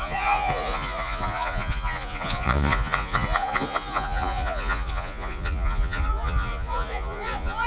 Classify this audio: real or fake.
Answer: fake